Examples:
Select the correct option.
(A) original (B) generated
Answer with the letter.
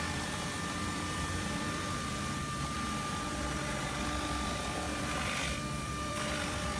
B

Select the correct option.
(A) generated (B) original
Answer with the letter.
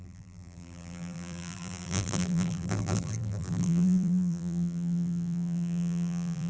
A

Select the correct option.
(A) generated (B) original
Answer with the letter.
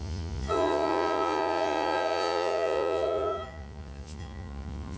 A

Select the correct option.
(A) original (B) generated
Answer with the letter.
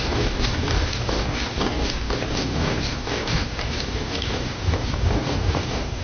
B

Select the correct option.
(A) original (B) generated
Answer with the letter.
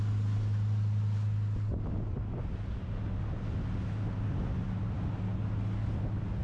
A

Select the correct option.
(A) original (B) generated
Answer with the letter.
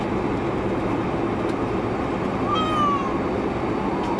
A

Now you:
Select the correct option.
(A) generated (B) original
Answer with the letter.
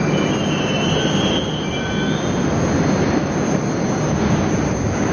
B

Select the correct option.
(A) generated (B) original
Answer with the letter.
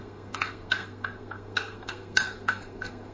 A